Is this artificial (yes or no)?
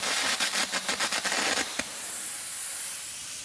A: no